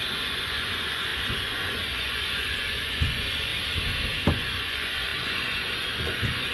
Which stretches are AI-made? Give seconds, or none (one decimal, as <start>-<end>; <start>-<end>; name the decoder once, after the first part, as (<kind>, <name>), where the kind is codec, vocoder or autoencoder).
0.0-3.5 (vocoder, Vocos); 4.3-6.5